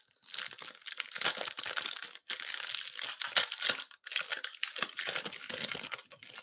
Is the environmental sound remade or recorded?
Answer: recorded